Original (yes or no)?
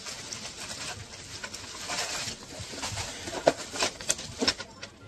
yes